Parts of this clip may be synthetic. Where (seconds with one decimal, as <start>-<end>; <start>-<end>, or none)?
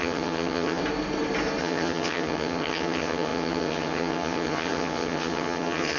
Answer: 0.0-0.8; 1.6-6.0